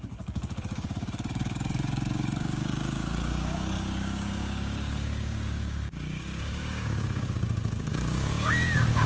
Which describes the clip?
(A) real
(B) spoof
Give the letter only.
B